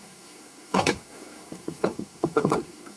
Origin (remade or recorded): remade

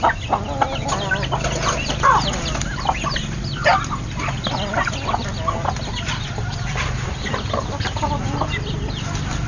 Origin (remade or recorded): recorded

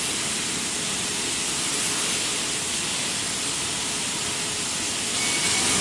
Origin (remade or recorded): recorded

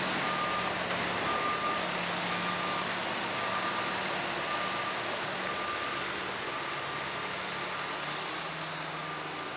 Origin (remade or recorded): recorded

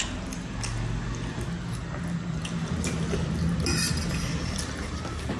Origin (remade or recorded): recorded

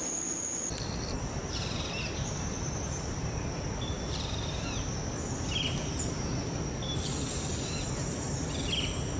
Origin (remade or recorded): recorded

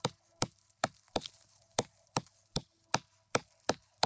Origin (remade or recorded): recorded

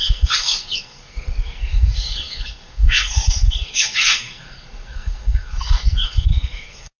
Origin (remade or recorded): remade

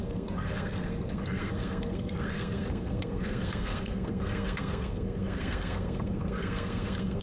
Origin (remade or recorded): remade